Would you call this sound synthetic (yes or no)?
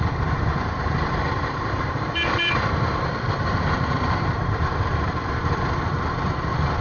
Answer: yes